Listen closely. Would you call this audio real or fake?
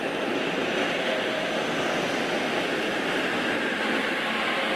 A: real